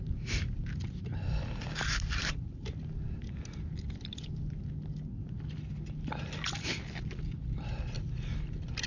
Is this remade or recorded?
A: recorded